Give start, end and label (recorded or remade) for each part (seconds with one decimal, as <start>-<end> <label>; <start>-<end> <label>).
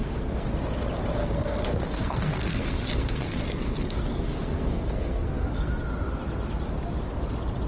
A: 0.0-0.5 remade; 0.5-1.2 recorded; 1.2-5.7 remade; 5.7-7.7 recorded